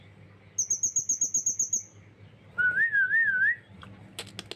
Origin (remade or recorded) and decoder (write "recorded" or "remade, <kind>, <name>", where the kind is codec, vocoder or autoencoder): recorded